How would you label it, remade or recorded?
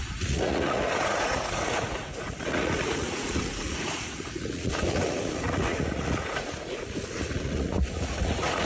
remade